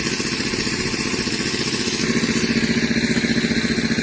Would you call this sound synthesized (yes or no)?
no